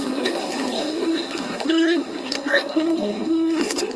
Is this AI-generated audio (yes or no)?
yes